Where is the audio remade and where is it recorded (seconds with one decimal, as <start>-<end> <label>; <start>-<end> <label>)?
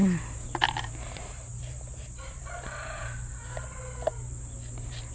0.0-2.4 remade; 2.4-4.1 recorded; 4.1-5.1 remade